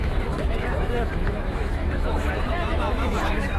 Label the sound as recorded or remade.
remade